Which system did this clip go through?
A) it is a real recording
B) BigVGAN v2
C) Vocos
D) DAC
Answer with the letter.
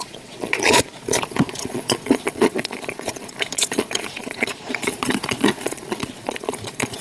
C